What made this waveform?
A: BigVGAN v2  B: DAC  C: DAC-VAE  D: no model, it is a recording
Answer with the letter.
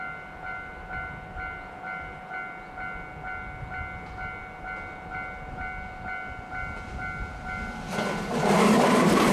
D